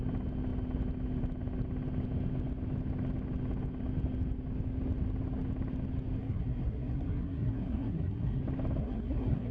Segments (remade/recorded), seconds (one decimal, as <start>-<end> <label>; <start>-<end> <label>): 0.0-6.2 recorded; 6.2-8.4 remade; 8.4-8.8 recorded; 8.8-9.5 remade